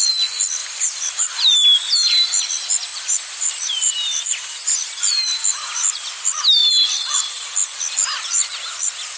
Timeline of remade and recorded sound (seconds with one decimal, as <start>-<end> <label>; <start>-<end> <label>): 0.0-0.6 recorded; 0.6-1.5 remade; 1.5-2.9 recorded; 2.9-5.0 remade; 5.0-9.2 recorded

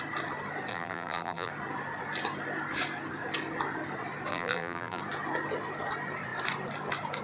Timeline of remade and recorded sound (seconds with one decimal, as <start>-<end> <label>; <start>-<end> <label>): 0.0-0.7 recorded; 0.7-1.5 remade; 1.5-4.3 recorded; 4.3-5.0 remade; 5.0-7.2 recorded

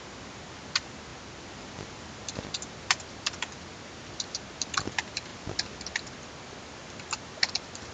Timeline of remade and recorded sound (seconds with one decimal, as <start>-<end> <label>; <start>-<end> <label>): 0.0-7.9 recorded

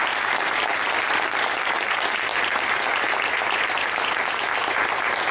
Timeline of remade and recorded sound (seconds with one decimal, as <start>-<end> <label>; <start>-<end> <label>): 0.0-2.3 remade; 2.3-5.3 recorded

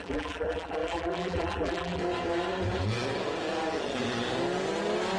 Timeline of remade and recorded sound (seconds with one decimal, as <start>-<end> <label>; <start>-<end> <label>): 0.0-2.0 remade; 2.0-5.2 recorded

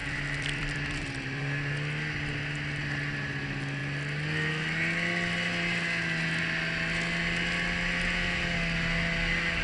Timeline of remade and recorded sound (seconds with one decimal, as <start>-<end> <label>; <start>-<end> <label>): 0.0-1.7 remade; 1.7-9.6 recorded

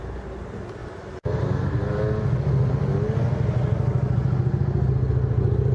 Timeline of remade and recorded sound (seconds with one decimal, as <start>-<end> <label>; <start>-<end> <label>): 0.0-0.8 recorded; 0.8-2.0 remade; 2.0-5.7 recorded

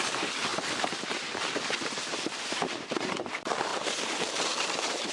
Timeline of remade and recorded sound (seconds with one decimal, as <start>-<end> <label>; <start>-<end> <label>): 0.0-5.1 remade